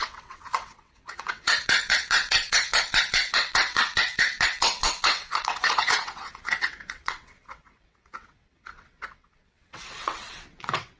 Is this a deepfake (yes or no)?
yes